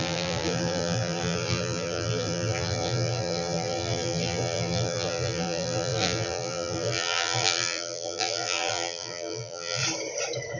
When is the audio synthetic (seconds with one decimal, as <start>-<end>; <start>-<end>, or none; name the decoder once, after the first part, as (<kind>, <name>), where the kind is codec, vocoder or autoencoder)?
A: 0.0-9.8 (vocoder, BigVGAN v2)